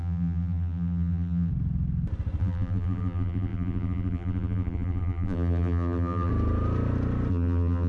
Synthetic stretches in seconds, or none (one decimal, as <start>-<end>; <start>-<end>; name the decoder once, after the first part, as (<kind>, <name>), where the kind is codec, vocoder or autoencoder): 0.0-1.5 (vocoder, BigVGAN v2); 2.4-6.3; 7.3-7.9